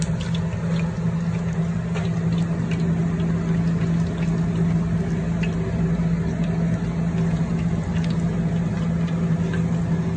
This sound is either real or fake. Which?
real